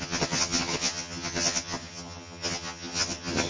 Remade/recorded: remade